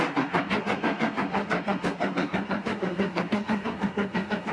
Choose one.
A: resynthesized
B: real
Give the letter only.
A